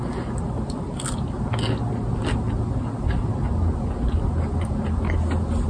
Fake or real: real